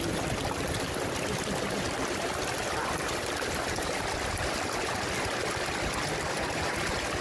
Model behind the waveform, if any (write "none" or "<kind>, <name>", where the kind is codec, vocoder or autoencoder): none